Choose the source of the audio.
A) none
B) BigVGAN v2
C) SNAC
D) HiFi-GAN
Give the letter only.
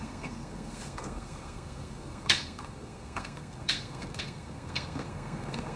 C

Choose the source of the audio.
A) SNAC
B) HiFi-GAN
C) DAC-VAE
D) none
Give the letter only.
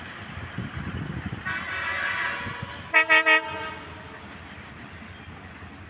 D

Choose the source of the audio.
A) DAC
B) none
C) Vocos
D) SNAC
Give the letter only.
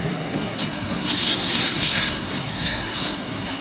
D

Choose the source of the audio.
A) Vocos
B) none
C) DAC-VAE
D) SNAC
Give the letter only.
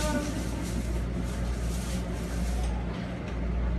B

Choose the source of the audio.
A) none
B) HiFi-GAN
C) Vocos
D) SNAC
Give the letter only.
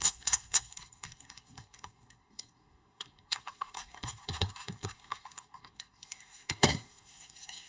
D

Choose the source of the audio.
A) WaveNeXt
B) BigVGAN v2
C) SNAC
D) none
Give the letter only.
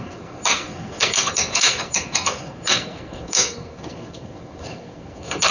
C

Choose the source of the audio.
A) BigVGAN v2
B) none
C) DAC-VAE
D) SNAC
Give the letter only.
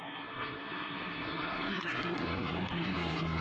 D